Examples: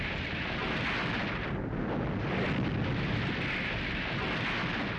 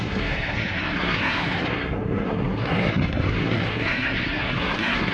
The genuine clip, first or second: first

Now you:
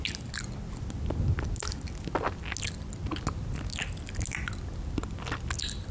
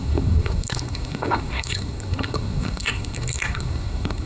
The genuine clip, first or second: first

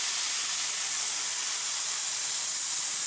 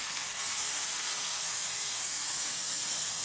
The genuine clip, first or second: first